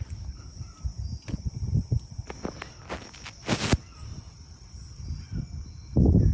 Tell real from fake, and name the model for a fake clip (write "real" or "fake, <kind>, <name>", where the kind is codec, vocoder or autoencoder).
real